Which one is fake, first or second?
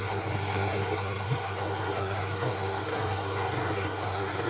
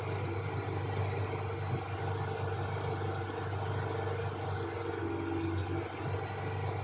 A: first